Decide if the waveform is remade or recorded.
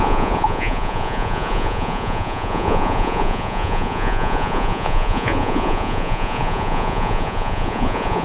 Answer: remade